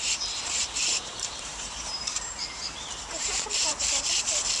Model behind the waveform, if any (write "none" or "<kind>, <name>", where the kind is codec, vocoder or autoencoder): vocoder, BigVGAN v2